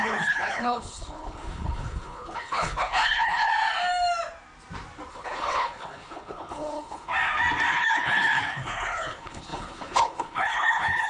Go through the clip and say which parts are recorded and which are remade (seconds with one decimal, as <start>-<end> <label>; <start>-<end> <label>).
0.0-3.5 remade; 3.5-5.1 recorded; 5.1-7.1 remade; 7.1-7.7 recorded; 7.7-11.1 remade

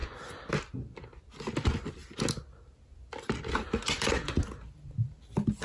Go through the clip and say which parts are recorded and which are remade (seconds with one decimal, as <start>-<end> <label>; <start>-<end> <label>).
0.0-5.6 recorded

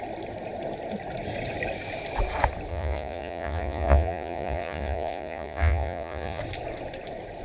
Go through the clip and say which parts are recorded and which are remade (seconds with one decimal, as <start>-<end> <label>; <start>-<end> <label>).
0.0-2.7 recorded; 2.7-6.4 remade; 6.4-7.4 recorded

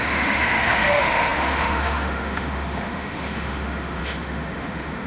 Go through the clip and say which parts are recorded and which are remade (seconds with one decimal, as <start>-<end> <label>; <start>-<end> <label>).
0.0-5.1 remade

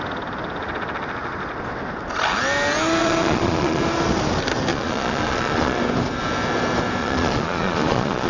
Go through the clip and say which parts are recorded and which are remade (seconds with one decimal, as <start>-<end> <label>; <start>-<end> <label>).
0.0-3.0 recorded; 3.0-3.8 remade; 3.8-4.7 recorded; 4.7-5.8 remade; 5.8-7.0 recorded; 7.0-8.3 remade